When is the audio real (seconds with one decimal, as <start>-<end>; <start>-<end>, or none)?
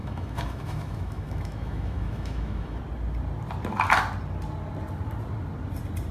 2.8-6.1